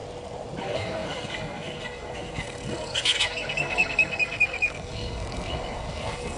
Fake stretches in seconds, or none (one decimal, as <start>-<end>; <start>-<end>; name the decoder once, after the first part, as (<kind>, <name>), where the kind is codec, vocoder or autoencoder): 0.6-6.4 (codec, SNAC)